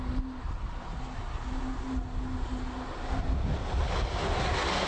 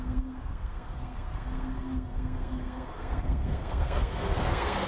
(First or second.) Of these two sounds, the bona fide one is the first